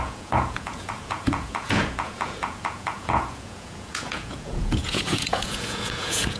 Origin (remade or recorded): remade